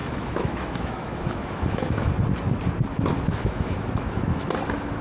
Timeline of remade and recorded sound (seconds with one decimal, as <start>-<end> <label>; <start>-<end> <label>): 0.0-2.1 remade; 2.1-3.1 recorded; 3.1-4.5 remade; 4.5-5.0 recorded